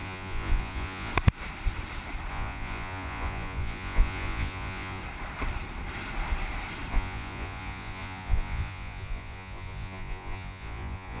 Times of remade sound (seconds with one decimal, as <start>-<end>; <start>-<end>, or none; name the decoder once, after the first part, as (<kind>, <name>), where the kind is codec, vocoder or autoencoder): 0.0-1.1 (vocoder, Vocos); 2.3-5.0; 6.9-11.2